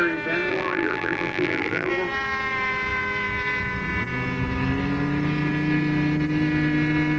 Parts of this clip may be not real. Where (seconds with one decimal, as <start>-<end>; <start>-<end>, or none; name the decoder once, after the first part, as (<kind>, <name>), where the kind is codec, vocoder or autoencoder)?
0.5-1.9 (vocoder, BigVGAN v2)